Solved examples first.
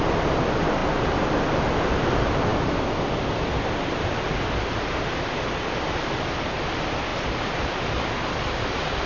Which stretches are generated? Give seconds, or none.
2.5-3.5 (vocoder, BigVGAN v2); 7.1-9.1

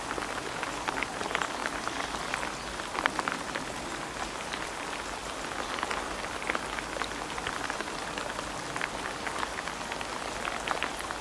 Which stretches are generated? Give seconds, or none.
none

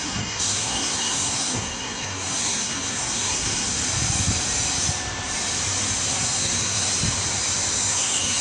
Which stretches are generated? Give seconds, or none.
0.0-3.8 (codec, SNAC); 6.1-6.9; 7.9-8.4

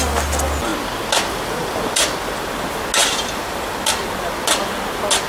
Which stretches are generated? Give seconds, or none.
none

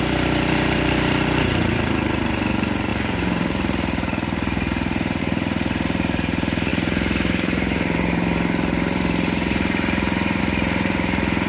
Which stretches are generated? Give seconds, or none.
0.0-11.5 (vocoder, BigVGAN v2)